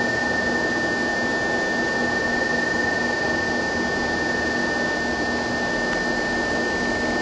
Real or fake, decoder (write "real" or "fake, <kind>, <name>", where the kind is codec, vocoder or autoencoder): real